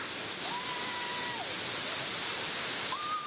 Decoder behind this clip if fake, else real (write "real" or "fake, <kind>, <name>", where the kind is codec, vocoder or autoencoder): real